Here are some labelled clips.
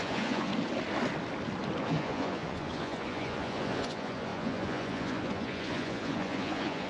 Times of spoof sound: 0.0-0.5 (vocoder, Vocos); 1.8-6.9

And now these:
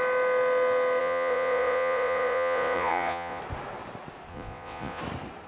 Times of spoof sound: 1.0-3.4 (vocoder, Vocos); 4.3-5.0

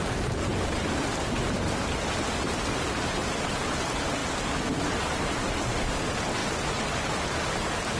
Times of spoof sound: none

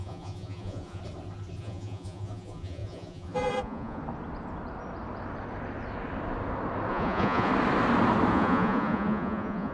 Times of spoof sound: 0.0-1.0 (vocoder, Vocos); 1.6-4.0; 6.9-7.5; 8.3-9.7